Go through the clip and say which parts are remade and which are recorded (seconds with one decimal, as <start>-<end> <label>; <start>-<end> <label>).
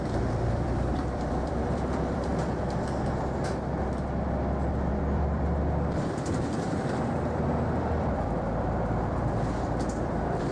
0.0-2.3 remade; 2.3-4.9 recorded; 4.9-10.5 remade